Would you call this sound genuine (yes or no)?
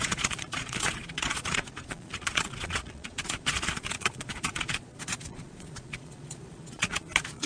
no